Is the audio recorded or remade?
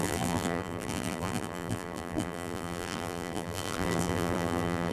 remade